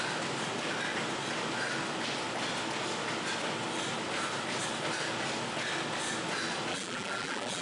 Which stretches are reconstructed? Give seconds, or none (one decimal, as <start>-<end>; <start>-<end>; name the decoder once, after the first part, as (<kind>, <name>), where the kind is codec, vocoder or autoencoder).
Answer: 6.7-7.6 (vocoder, BigVGAN v2)